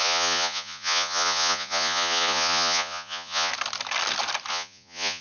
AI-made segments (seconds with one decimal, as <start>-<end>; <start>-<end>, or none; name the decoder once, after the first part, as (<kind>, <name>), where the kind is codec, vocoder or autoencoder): 0.0-3.5 (vocoder, Vocos); 4.5-5.2

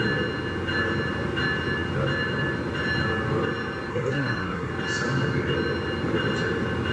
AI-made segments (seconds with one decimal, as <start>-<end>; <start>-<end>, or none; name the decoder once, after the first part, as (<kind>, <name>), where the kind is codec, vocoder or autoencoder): 3.9-4.7 (codec, SNAC)

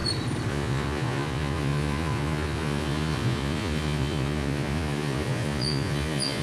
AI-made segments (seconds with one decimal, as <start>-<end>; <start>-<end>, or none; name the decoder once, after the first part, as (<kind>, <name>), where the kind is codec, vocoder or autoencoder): 0.5-6.4 (vocoder, Vocos)

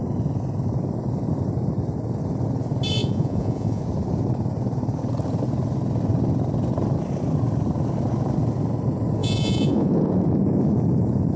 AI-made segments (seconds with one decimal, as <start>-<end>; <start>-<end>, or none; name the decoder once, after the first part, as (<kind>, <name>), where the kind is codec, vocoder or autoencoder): 3.0-3.8 (vocoder, Vocos); 9.2-9.9

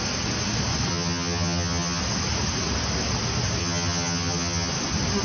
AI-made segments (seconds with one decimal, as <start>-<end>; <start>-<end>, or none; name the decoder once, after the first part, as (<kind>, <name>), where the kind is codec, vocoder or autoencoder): 0.9-2.0 (vocoder, HiFi-GAN); 3.6-4.7

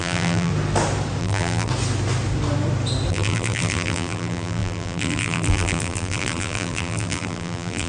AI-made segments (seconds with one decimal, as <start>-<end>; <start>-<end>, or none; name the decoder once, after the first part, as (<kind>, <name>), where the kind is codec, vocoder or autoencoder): 0.0-0.5 (vocoder, BigVGAN v2); 1.2-1.7; 3.1-7.9